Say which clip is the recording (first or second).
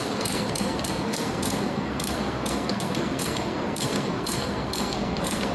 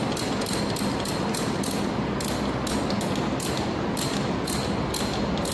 second